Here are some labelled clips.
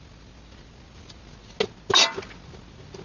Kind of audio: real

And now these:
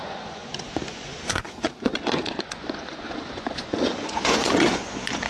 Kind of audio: fake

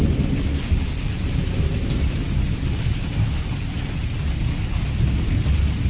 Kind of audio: real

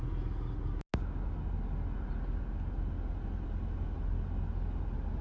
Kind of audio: real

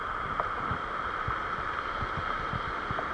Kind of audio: real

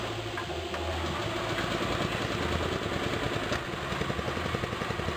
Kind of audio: real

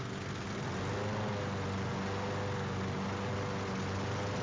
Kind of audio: real